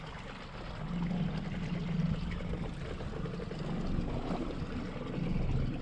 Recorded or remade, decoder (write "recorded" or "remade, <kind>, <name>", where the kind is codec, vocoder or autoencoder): recorded